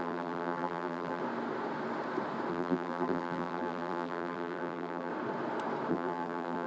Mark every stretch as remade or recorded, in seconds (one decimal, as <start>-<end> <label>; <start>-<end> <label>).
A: 0.0-1.2 remade; 1.2-2.5 recorded; 2.5-5.1 remade; 5.1-5.9 recorded; 5.9-6.7 remade